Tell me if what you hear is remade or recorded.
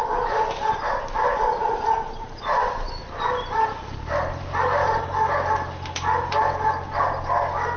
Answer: recorded